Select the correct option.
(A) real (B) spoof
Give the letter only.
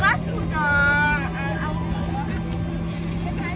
A